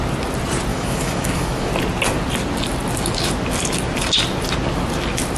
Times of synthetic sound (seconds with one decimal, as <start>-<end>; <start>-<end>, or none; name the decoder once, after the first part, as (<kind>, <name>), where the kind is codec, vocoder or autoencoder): 0.7-1.7 (autoencoder, DAC-VAE)